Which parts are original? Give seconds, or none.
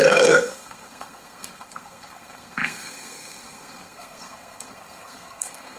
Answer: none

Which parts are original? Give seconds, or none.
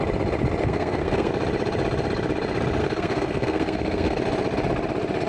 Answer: 0.0-0.6; 1.3-2.8; 4.2-5.3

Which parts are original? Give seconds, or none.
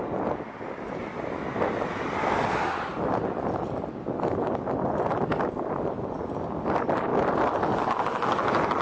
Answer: 0.0-8.8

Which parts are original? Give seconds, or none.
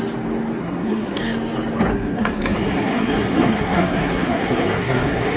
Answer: 0.0-0.6; 1.2-1.9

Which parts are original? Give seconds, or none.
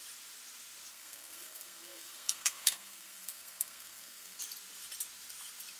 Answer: 0.0-0.9; 4.4-5.8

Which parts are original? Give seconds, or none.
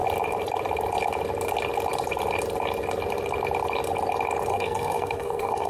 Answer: 0.0-4.5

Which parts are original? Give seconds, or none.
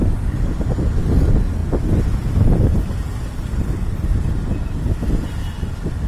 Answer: 0.0-6.1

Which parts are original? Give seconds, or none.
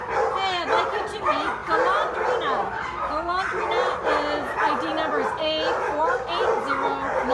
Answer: 0.0-7.3